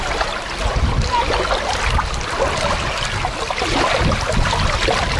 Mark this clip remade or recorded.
recorded